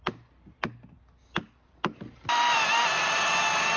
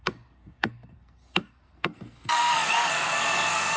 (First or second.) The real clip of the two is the first